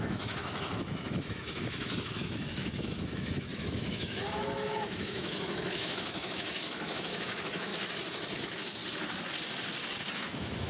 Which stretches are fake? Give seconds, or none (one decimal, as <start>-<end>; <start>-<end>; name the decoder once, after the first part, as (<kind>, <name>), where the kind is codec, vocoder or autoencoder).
0.0-7.7 (autoencoder, DAC-VAE); 8.4-8.8; 10.1-10.7